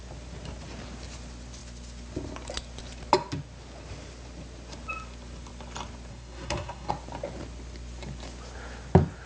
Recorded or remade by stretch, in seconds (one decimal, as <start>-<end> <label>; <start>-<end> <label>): 0.0-6.1 recorded; 6.1-6.9 remade; 6.9-9.3 recorded